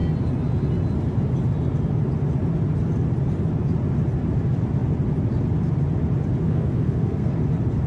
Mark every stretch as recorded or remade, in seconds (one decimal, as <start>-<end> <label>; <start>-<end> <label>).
0.0-6.4 recorded; 6.4-7.4 remade; 7.4-7.9 recorded